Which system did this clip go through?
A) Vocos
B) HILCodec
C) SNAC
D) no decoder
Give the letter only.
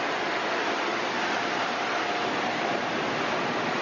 D